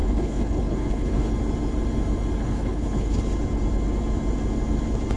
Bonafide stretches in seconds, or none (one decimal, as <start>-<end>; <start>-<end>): 1.3-2.4; 3.2-5.2